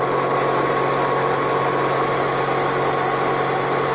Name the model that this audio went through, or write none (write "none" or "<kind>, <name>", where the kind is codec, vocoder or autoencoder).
none